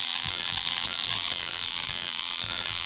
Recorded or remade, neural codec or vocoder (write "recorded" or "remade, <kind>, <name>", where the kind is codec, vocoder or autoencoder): remade, vocoder, BigVGAN v2